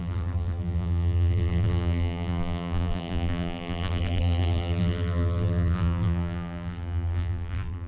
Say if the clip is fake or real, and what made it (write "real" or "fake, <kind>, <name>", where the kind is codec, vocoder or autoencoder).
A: fake, vocoder, BigVGAN v2